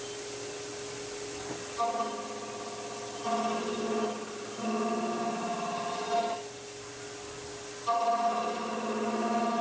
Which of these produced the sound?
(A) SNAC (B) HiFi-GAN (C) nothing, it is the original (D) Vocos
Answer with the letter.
C